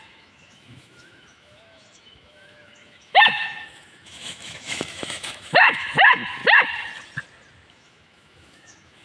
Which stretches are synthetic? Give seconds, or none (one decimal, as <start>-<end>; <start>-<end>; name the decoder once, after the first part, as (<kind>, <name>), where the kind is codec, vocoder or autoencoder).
0.0-6.4 (autoencoder, DAC-VAE); 7.7-9.0